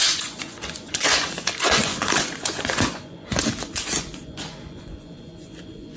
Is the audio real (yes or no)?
no